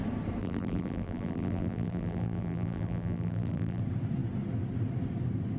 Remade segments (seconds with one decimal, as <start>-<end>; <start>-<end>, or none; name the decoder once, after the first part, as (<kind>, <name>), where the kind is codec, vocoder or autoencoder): 0.4-3.8 (vocoder, BigVGAN v2)